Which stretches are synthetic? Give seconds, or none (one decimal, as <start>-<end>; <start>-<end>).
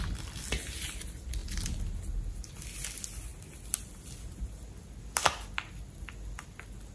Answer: none